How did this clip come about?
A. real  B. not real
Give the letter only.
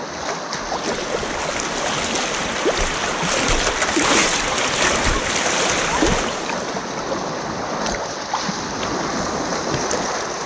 A